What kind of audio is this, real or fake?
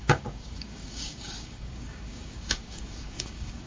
fake